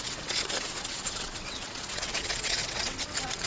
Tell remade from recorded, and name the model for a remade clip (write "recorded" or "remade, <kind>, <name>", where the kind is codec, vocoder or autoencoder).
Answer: remade, vocoder, WaveNeXt